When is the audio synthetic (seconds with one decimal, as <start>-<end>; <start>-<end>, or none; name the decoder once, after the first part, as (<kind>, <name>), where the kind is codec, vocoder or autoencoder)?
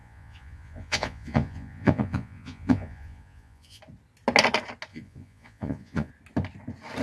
0.0-3.8 (vocoder, Vocos); 4.9-6.1